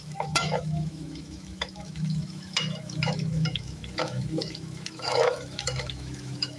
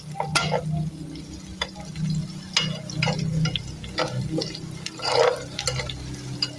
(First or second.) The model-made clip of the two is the first